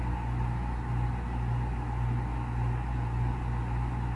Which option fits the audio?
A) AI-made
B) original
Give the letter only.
B